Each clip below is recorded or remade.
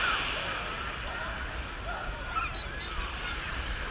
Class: recorded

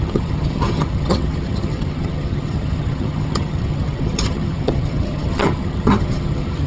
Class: remade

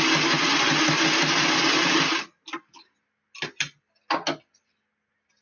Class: recorded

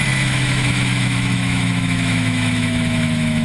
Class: remade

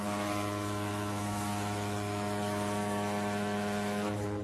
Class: remade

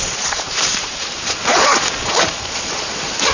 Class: remade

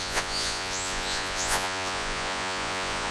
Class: remade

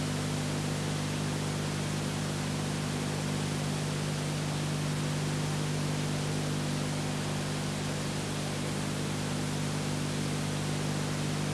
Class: recorded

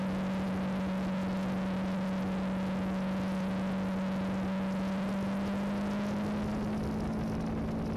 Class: recorded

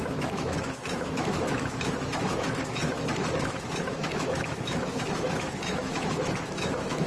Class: remade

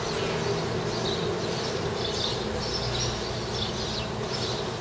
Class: recorded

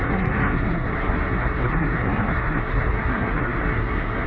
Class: remade